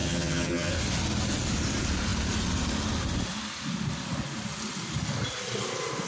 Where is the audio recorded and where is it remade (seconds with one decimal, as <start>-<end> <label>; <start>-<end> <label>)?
0.0-0.7 remade; 0.7-6.1 recorded